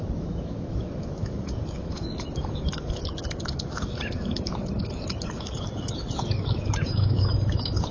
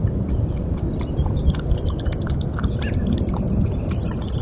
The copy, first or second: first